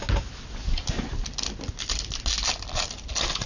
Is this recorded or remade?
recorded